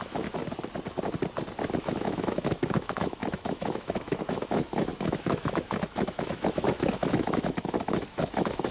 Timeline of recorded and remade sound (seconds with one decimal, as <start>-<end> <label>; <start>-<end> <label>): 0.0-0.4 remade; 0.4-1.8 recorded; 1.8-8.7 remade